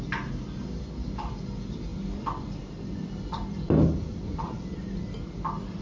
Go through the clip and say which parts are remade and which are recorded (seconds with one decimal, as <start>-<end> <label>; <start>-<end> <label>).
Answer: 0.0-1.9 recorded; 1.9-5.8 remade

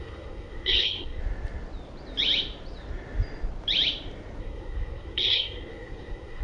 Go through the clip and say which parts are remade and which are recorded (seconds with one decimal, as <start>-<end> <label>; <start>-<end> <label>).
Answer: 0.0-1.2 remade; 1.2-4.4 recorded; 4.4-6.4 remade

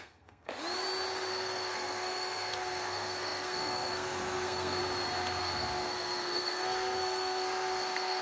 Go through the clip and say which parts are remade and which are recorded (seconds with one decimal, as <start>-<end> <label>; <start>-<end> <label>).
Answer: 0.0-0.5 remade; 0.5-1.3 recorded; 1.3-4.8 remade; 4.8-5.4 recorded; 5.4-8.2 remade

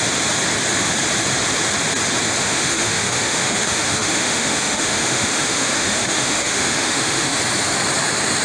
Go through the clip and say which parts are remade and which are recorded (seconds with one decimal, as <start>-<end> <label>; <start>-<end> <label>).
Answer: 0.0-2.4 recorded; 2.4-7.4 remade; 7.4-8.4 recorded

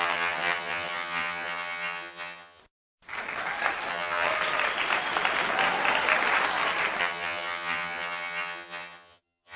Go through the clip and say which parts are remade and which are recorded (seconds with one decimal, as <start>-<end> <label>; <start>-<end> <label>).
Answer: 0.0-2.6 remade; 2.6-3.9 recorded; 3.9-4.3 remade; 4.3-7.0 recorded; 7.0-9.6 remade

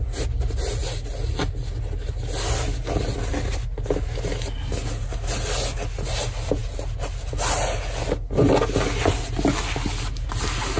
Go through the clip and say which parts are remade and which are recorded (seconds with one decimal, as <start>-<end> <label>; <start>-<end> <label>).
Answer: 0.0-10.8 recorded

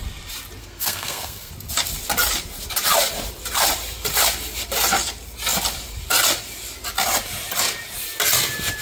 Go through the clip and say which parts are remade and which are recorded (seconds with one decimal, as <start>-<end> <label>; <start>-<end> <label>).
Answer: 0.0-0.6 recorded; 0.6-1.5 remade; 1.5-8.8 recorded

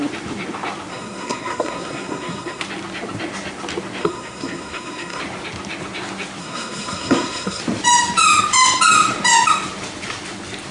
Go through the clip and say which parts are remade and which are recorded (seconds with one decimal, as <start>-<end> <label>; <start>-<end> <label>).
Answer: 0.0-0.9 recorded; 0.9-2.6 remade; 2.6-4.0 recorded; 4.0-5.2 remade; 5.2-6.4 recorded; 6.4-7.6 remade; 7.6-10.7 recorded